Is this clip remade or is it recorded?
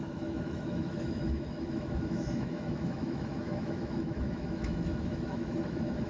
remade